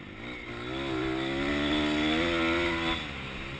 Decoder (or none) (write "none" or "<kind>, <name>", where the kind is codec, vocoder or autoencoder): none